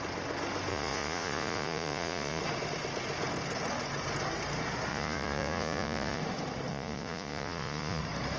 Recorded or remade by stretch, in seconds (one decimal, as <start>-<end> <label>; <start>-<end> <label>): 0.0-0.7 recorded; 0.7-2.4 remade; 2.4-4.9 recorded; 4.9-6.2 remade; 6.2-6.7 recorded; 6.7-8.0 remade; 8.0-8.4 recorded